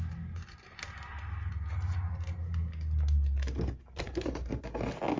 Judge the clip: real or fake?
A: real